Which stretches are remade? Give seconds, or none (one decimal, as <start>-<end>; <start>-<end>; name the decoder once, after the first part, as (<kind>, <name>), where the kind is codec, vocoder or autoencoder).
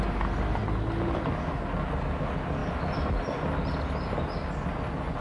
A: none